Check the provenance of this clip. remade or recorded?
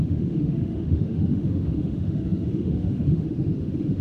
remade